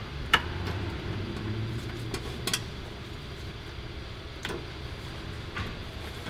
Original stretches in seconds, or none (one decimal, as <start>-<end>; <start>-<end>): 1.3-6.3